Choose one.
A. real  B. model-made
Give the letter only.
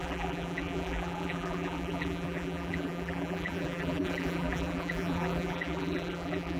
B